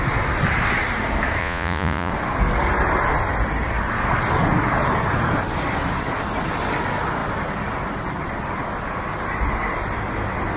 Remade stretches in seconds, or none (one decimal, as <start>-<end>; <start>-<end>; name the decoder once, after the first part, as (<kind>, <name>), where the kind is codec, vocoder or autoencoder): 1.4-2.1 (vocoder, Vocos)